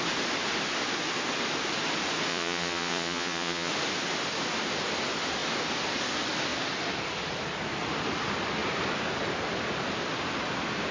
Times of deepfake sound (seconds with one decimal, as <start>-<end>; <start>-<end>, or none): 2.3-3.7